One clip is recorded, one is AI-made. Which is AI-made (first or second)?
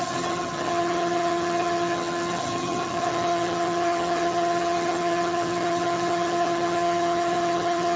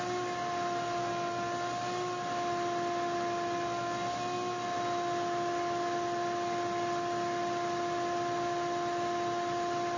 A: first